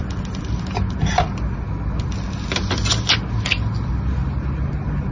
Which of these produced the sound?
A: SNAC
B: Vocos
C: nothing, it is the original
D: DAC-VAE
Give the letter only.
C